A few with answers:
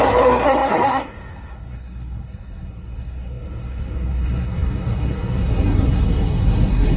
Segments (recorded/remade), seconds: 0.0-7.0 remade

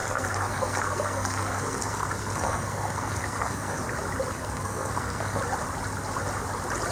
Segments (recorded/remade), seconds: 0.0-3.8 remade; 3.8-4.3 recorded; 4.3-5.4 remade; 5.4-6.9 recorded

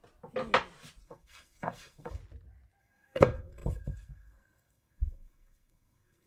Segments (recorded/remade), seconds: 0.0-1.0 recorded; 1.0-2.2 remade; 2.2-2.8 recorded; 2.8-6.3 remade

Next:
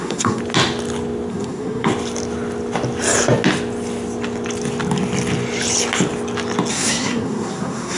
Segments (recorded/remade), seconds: 0.0-0.4 remade; 0.4-1.3 recorded; 1.3-1.9 remade; 1.9-6.7 recorded; 6.7-8.0 remade

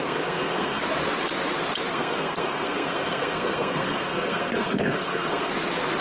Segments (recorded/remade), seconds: 0.0-0.8 remade; 0.8-1.9 recorded; 1.9-5.5 remade; 5.5-6.0 recorded

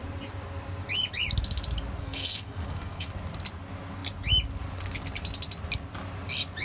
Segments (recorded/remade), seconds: 0.0-2.0 recorded; 2.0-3.1 remade; 3.1-6.6 recorded

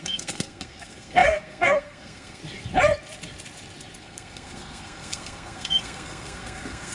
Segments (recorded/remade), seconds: 0.0-2.4 remade; 2.4-4.0 recorded; 4.0-6.9 remade

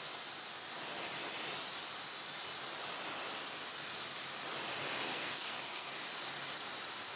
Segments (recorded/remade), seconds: 0.0-5.1 recorded; 5.1-5.9 remade; 5.9-7.2 recorded